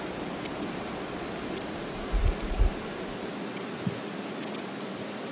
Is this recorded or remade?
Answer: recorded